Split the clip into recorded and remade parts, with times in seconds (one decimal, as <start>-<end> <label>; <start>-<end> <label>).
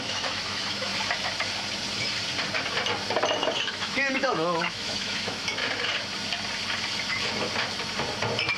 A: 0.0-0.9 remade; 0.9-3.6 recorded; 3.6-5.6 remade; 5.6-8.6 recorded